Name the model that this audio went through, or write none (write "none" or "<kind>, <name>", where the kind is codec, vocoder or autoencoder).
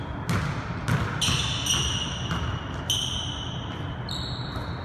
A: none